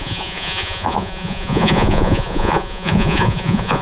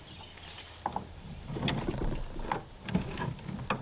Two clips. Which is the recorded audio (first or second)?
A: second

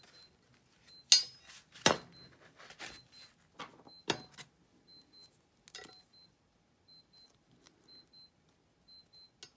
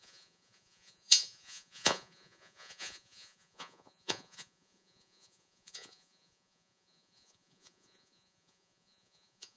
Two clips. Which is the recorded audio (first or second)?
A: first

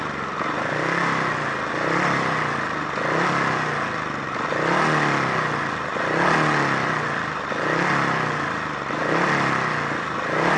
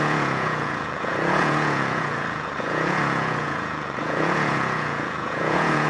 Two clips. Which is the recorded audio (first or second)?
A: first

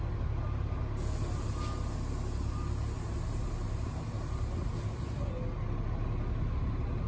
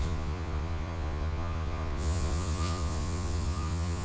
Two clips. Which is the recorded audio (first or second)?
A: first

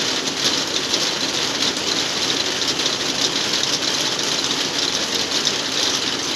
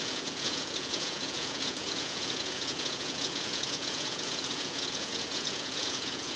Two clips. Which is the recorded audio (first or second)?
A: first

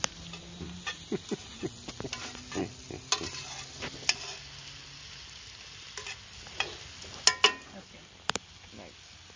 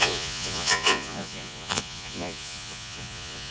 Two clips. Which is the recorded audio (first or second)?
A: first